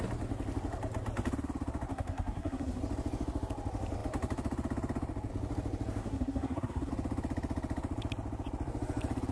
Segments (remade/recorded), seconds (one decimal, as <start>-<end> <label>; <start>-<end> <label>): 0.0-1.9 recorded; 1.9-2.8 remade; 2.8-6.0 recorded; 6.0-6.9 remade; 6.9-9.3 recorded